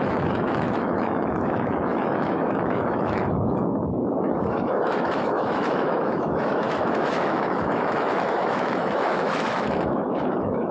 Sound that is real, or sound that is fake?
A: fake